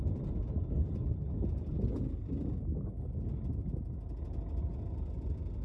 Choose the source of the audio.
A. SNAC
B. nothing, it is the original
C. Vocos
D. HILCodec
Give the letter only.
B